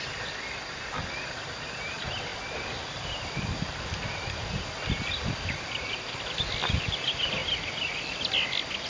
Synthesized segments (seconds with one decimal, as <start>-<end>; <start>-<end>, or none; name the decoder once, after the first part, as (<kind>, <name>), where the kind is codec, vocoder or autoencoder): 2.3-6.9 (vocoder, BigVGAN v2); 7.4-8.1